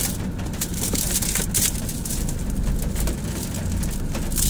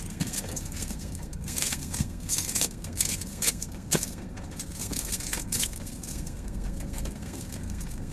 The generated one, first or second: second